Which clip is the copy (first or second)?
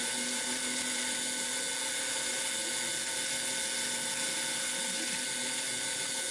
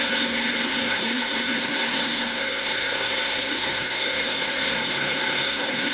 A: second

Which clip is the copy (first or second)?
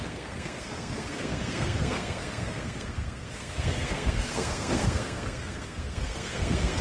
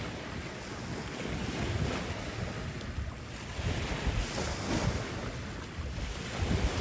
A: first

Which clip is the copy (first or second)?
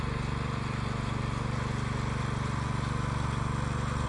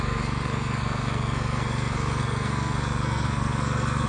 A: second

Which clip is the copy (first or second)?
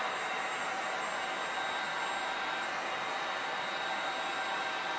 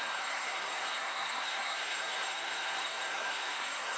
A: second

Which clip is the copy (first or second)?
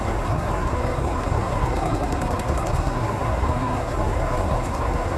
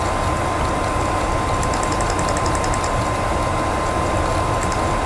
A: first